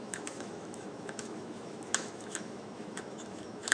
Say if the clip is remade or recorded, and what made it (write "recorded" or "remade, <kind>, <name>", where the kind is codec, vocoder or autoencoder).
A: remade, autoencoder, DAC-VAE